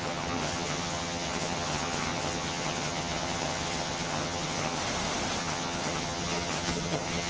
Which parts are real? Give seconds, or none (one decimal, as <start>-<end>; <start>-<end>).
4.8-5.4